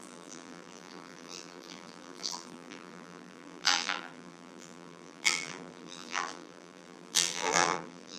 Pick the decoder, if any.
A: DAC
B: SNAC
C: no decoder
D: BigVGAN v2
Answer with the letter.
D